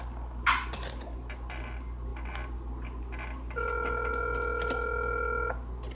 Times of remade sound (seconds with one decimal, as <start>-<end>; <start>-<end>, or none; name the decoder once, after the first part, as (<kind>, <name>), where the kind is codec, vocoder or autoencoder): none